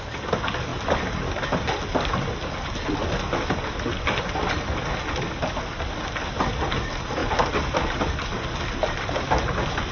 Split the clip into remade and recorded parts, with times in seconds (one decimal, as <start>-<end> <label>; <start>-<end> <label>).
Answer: 0.0-9.9 recorded